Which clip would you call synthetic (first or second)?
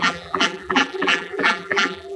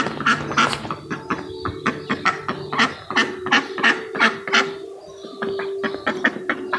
first